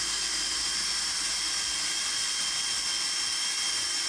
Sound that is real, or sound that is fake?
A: real